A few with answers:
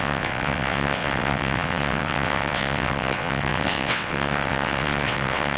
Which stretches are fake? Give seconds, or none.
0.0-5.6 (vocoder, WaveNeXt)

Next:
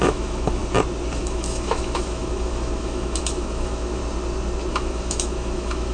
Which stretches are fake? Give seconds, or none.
0.0-0.6 (autoencoder, DAC-VAE); 1.2-4.0; 4.7-5.9

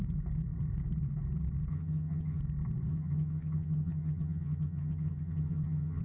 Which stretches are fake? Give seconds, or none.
1.7-2.4 (vocoder, HiFi-GAN); 2.9-6.0

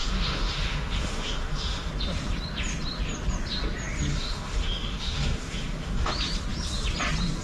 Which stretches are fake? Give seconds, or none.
0.0-1.9 (autoencoder, DAC-VAE); 4.1-6.1

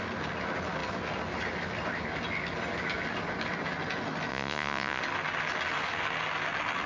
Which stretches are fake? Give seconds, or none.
4.3-5.0 (vocoder, Vocos)

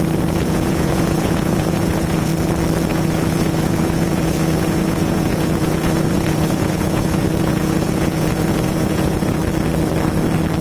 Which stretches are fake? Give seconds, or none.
0.0-2.3 (vocoder, Vocos); 2.9-9.4